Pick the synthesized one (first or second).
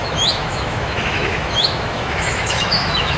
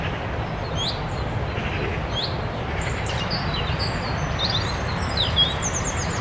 first